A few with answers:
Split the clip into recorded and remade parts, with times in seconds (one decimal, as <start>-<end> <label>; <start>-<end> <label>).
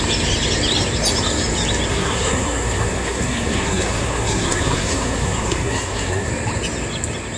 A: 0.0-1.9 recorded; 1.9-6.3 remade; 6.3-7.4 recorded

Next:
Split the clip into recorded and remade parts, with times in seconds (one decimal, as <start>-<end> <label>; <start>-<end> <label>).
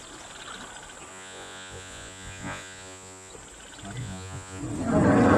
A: 0.0-1.1 recorded; 1.1-3.3 remade; 3.3-4.0 recorded; 4.0-4.6 remade; 4.6-5.4 recorded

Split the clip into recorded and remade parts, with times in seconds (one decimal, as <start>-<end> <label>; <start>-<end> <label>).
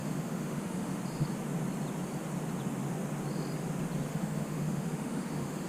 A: 0.0-1.0 remade; 1.0-4.1 recorded; 4.1-5.7 remade